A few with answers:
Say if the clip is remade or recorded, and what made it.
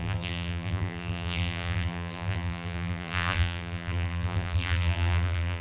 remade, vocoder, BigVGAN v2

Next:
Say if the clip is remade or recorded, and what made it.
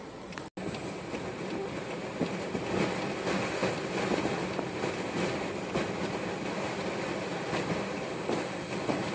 recorded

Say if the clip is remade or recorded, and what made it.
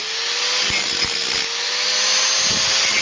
recorded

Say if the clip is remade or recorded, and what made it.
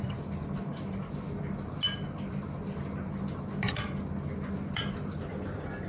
recorded